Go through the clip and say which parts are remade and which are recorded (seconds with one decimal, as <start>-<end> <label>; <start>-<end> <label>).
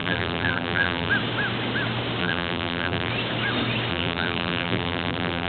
0.0-1.1 remade; 1.1-2.2 recorded; 2.2-3.1 remade; 3.1-3.9 recorded; 3.9-5.5 remade